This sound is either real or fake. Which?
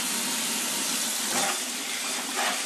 real